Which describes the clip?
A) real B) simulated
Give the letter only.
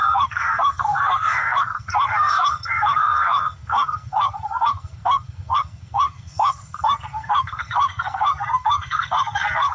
B